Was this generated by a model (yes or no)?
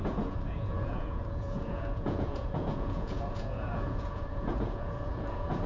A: yes